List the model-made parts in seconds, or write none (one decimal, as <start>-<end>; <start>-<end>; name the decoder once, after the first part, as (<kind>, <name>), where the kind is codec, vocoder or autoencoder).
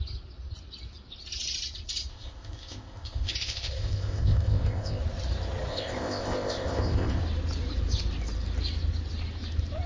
2.1-5.0 (codec, ZipCodec); 5.7-7.2